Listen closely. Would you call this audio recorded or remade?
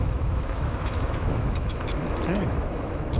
remade